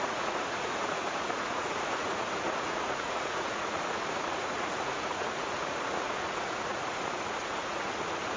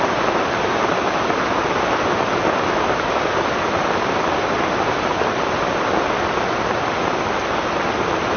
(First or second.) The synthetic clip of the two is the first